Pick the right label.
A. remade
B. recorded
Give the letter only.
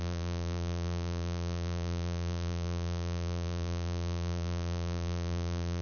A